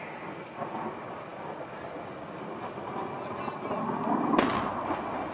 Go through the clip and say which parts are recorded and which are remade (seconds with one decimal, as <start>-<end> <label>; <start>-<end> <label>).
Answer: 0.0-5.3 recorded